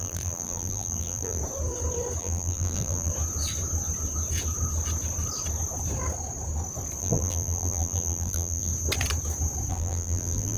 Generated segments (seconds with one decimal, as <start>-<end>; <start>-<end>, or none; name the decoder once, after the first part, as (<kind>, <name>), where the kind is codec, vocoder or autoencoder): 0.0-1.4 (vocoder, BigVGAN v2); 2.2-3.1; 7.0-8.7; 9.7-10.6